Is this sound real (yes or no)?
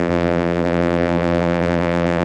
no